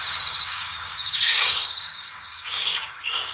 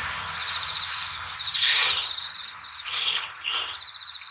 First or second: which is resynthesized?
first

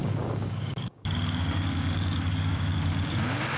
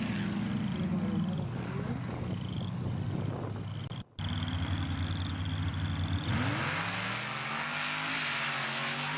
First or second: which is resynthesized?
first